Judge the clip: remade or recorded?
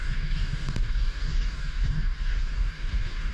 remade